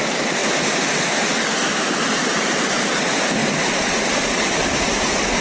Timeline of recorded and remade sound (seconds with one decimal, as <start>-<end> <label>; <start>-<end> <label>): 0.0-1.7 recorded; 1.7-2.9 remade; 2.9-3.4 recorded; 3.4-4.2 remade; 4.2-5.4 recorded

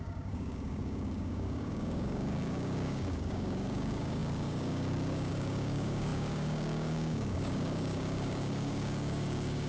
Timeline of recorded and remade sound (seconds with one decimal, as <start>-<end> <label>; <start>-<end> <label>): 0.0-9.7 remade

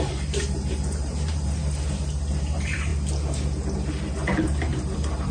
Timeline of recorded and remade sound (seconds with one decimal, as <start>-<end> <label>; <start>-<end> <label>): 0.0-1.6 remade; 1.6-2.4 recorded; 2.4-2.9 remade; 2.9-4.4 recorded; 4.4-5.3 remade